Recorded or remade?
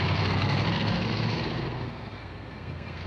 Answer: remade